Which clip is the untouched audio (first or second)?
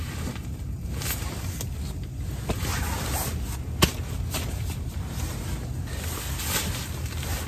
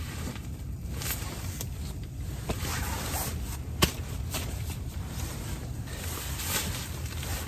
first